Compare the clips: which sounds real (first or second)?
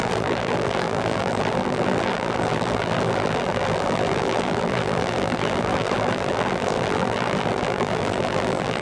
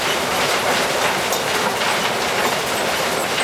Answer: second